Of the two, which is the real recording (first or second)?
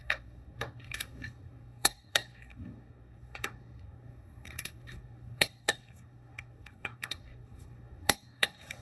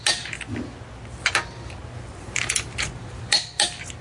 second